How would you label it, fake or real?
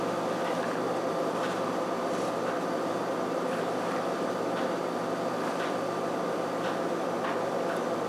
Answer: fake